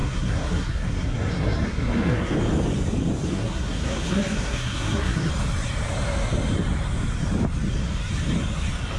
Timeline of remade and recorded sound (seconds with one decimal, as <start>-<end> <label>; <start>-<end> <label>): 0.0-2.3 remade; 2.3-3.3 recorded; 3.3-5.3 remade; 5.3-9.0 recorded